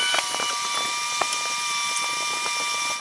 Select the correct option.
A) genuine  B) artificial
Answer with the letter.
A